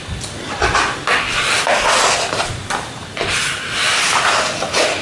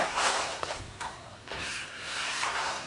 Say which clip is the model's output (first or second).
second